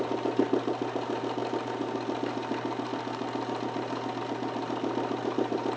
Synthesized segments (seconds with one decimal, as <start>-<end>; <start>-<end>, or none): none